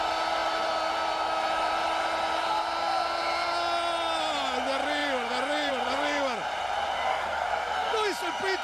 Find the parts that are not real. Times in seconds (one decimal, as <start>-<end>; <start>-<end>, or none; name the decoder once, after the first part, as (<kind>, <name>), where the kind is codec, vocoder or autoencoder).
7.1-7.9 (codec, SNAC)